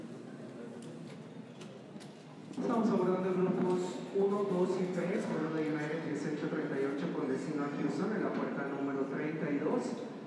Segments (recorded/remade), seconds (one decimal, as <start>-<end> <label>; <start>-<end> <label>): 0.0-4.7 recorded; 4.7-5.5 remade; 5.5-10.3 recorded